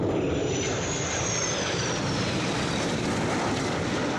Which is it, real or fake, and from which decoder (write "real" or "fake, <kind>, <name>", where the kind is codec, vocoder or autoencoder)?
real